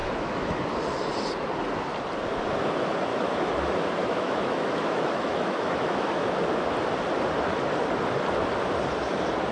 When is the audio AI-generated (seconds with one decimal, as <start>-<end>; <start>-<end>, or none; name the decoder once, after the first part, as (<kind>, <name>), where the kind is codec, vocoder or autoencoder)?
0.0-0.6 (autoencoder, DAC-VAE); 3.1-3.6; 4.0-6.1